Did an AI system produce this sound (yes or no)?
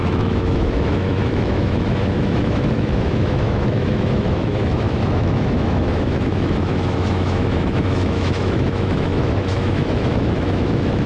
yes